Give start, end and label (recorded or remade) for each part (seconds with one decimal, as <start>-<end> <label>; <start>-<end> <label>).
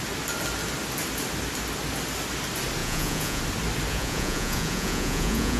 0.0-2.8 recorded; 2.8-3.4 remade; 3.4-3.9 recorded; 3.9-5.6 remade